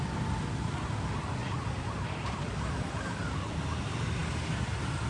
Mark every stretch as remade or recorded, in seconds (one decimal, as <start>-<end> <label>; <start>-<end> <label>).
0.0-1.4 recorded; 1.4-2.9 remade; 2.9-5.1 recorded